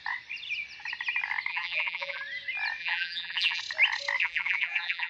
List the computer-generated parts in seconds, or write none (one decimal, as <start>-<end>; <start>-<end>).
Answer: 1.5-2.2; 2.8-3.6; 4.2-5.1